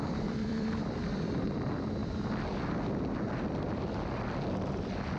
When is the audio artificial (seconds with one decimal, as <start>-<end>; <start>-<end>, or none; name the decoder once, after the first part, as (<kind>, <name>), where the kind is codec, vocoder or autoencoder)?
0.0-2.0 (vocoder, BigVGAN v2)